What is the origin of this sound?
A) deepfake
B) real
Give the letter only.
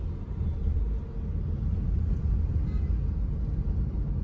B